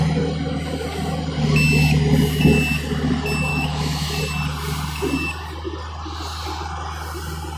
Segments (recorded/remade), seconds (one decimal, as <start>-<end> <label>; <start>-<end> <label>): 0.0-3.5 recorded; 3.5-4.2 remade; 4.2-7.6 recorded